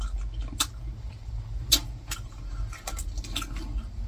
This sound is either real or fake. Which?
real